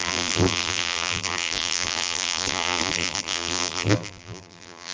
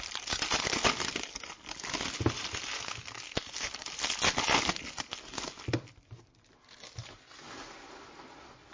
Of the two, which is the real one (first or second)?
second